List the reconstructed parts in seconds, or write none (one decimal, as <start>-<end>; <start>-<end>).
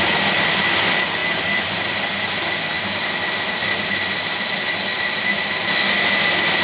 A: none